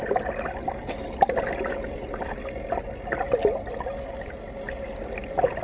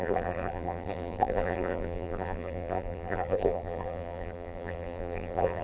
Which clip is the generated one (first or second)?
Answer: second